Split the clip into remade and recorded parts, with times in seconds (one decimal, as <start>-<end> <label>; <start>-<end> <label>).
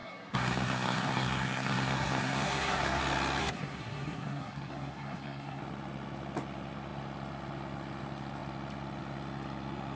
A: 0.0-3.0 remade; 3.0-3.4 recorded; 3.4-5.6 remade; 5.6-10.0 recorded